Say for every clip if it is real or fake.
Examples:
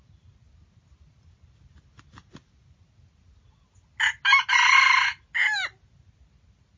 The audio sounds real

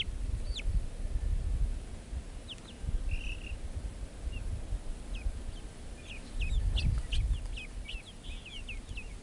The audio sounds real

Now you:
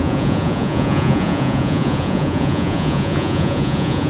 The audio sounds fake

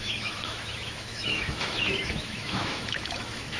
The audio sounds fake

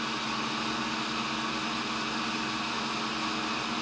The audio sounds real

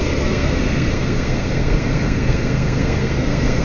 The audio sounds fake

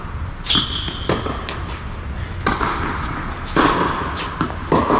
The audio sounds real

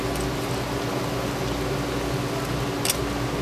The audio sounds real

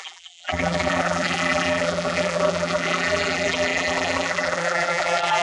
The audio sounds fake